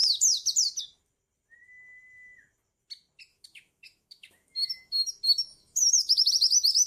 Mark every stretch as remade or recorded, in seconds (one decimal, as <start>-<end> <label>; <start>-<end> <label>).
0.0-3.3 recorded; 3.3-5.1 remade; 5.1-5.5 recorded; 5.5-6.3 remade; 6.3-6.9 recorded